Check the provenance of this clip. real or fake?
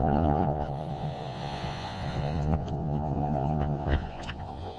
fake